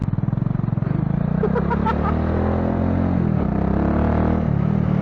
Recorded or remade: recorded